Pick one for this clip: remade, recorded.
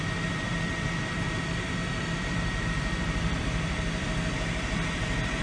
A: remade